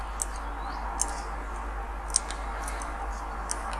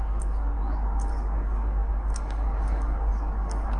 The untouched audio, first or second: first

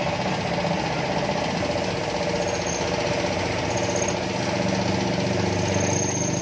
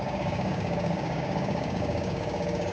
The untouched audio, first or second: first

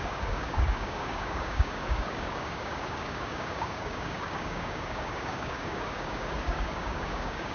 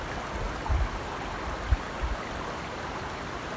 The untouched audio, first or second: second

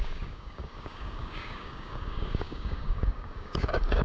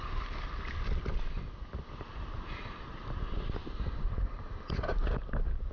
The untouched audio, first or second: second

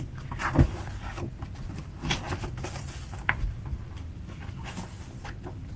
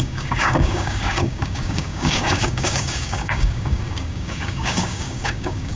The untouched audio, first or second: first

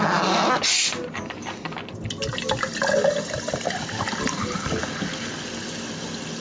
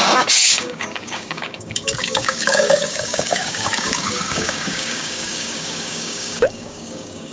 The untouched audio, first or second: first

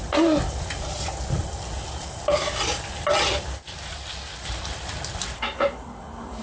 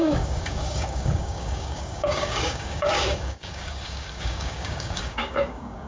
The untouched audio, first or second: first